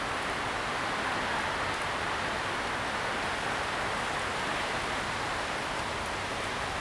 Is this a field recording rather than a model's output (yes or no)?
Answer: yes